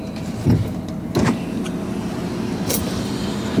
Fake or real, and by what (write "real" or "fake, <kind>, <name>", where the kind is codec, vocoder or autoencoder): real